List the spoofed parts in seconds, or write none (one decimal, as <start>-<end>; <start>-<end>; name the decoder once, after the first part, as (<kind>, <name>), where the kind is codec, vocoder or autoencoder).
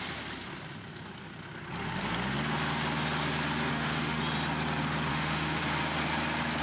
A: 3.7-4.2 (autoencoder, DAC-VAE); 5.1-5.6